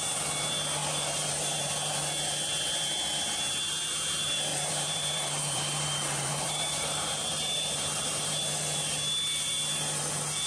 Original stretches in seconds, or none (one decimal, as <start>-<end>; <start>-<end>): 0.0-0.8; 1.7-4.5; 8.4-10.5